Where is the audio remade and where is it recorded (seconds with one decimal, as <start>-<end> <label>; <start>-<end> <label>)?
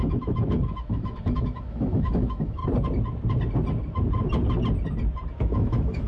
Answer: 0.0-2.6 remade; 2.6-5.4 recorded; 5.4-6.1 remade